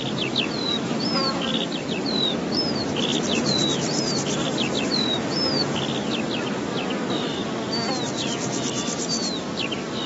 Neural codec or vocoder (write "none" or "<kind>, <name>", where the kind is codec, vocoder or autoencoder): none